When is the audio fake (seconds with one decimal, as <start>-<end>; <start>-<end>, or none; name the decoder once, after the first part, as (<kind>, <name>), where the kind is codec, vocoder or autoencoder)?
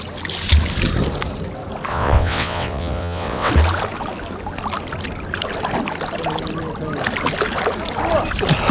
1.9-3.5 (vocoder, WaveNeXt)